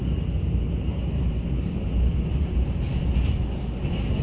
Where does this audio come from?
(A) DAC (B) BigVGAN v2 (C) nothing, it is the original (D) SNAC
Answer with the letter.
C